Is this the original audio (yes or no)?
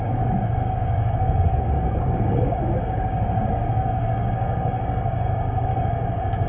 no